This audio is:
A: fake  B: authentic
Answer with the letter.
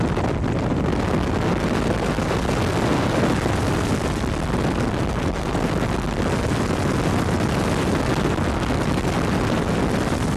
B